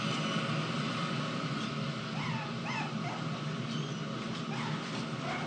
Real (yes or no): yes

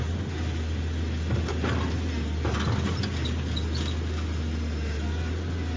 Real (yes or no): yes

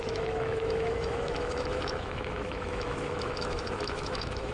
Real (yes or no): no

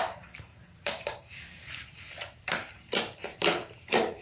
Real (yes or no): no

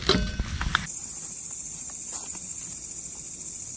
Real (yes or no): yes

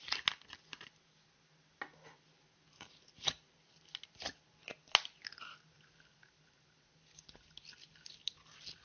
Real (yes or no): yes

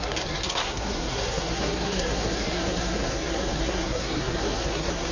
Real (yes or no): no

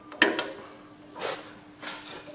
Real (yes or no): yes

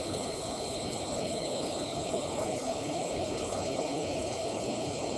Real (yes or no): no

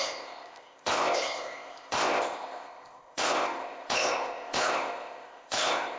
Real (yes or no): no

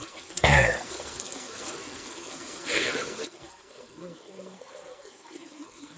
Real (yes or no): no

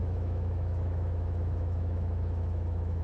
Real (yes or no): no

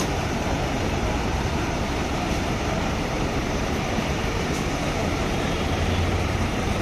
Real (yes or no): no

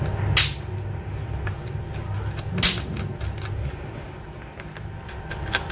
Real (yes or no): yes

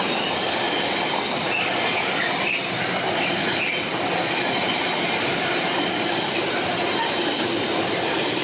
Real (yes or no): yes